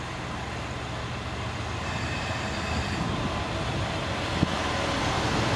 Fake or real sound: real